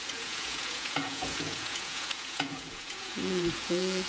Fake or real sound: fake